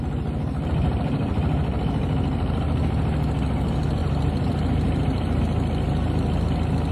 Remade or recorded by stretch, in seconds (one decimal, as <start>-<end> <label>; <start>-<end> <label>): 0.0-4.0 recorded; 4.0-5.4 remade; 5.4-6.9 recorded